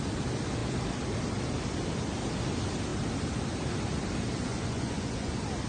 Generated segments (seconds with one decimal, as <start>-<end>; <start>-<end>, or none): 4.5-5.3